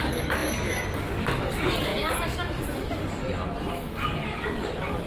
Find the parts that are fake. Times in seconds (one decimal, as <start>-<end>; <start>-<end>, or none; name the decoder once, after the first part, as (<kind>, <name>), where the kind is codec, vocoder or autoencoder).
0.0-3.2 (codec, DAC); 3.7-5.1